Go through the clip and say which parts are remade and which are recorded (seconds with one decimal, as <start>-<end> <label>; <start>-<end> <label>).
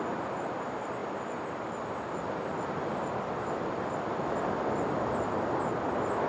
0.0-6.3 recorded